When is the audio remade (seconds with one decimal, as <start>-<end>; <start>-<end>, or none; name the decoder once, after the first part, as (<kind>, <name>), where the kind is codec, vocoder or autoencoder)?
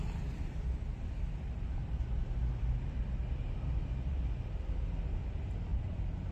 5.7-6.3 (vocoder, BigVGAN v2)